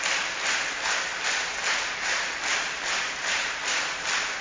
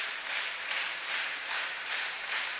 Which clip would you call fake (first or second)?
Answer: second